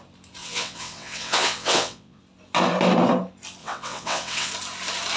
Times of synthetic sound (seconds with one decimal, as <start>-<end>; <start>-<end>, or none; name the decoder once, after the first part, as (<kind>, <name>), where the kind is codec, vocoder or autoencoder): 0.4-2.2 (vocoder, WaveNeXt); 3.6-4.5